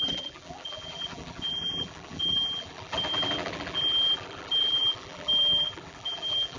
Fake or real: fake